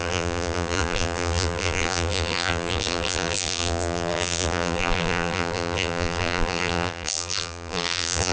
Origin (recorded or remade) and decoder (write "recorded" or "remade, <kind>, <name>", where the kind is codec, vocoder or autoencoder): remade, vocoder, BigVGAN v2